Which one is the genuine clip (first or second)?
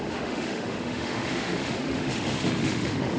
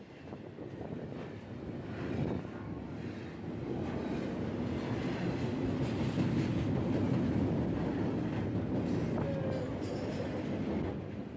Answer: second